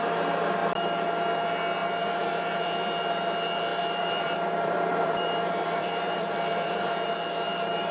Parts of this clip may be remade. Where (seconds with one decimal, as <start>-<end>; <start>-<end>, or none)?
1.8-3.0; 3.7-6.9